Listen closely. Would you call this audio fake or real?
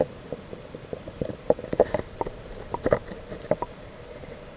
fake